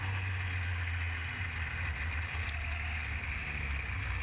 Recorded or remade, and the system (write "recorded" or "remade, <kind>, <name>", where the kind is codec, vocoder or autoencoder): recorded